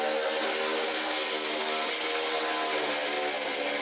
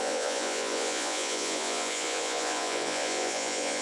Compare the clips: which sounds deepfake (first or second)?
second